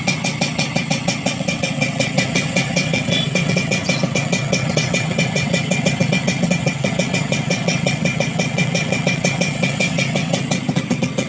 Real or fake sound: fake